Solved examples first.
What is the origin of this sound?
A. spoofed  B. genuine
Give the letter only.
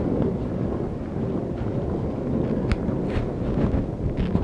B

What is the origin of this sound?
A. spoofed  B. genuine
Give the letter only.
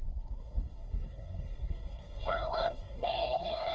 A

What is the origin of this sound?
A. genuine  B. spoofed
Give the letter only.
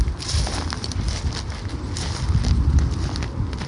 A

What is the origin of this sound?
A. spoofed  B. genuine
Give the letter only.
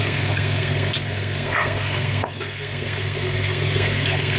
A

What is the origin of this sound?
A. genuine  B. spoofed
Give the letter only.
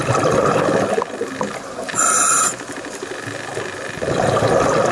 A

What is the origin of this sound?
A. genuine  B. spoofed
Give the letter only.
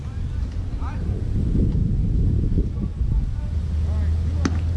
A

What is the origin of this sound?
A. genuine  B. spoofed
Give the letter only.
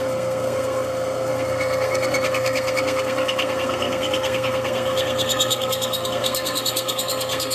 B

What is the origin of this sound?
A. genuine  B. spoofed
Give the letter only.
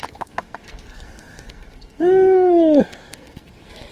B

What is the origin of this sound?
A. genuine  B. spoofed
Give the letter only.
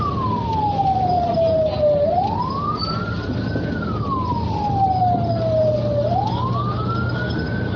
A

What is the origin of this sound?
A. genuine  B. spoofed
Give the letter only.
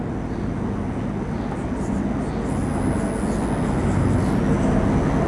A